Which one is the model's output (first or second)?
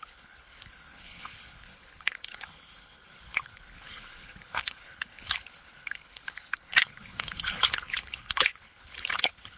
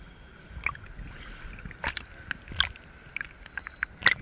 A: first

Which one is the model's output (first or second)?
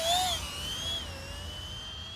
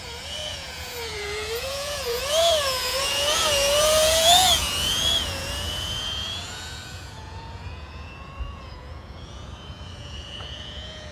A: second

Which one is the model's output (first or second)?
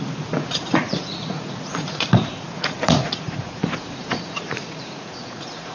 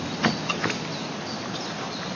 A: first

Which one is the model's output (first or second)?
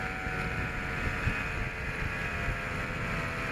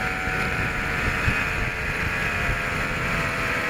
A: second